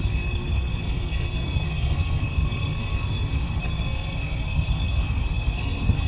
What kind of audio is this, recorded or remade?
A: remade